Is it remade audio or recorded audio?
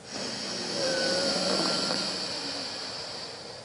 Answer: recorded